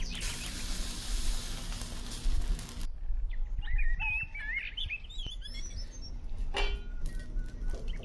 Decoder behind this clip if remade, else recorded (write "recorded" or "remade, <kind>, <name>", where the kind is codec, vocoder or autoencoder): recorded